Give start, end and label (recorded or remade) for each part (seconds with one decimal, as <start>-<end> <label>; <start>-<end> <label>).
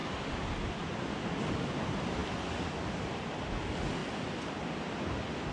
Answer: 0.0-5.5 recorded